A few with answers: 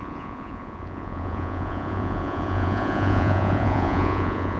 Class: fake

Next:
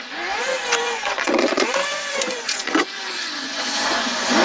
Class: fake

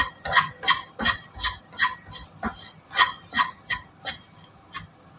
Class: real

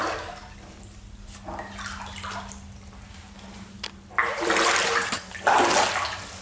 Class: real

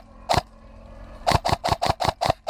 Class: real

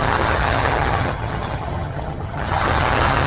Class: fake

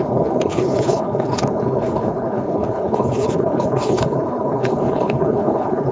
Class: fake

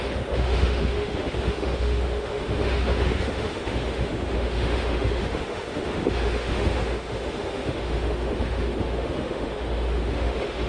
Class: fake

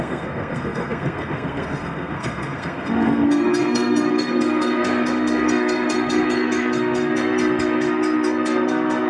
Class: fake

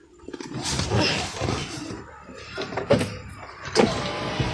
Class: real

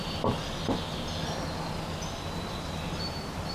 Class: real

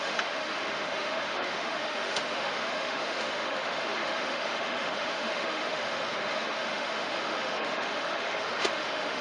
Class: fake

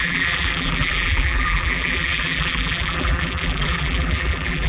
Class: fake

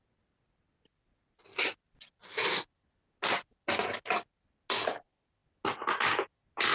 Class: real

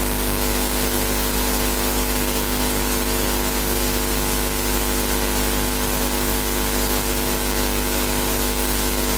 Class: fake